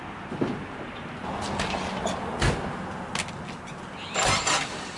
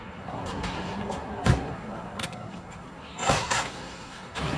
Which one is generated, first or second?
second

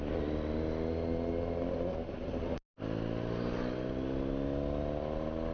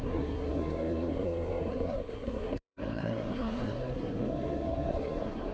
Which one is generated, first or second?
second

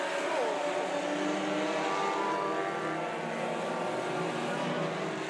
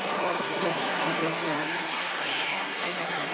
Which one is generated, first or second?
second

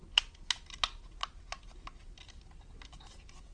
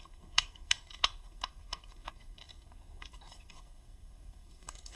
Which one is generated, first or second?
second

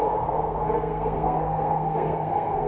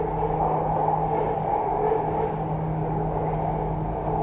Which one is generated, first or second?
first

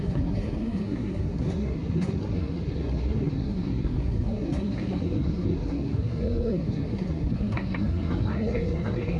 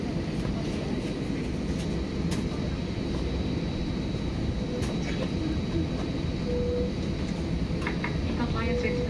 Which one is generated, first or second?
first